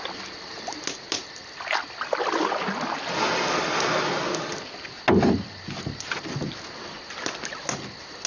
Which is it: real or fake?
real